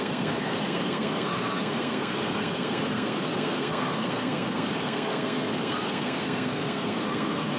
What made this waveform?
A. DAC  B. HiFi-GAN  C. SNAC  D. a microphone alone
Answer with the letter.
C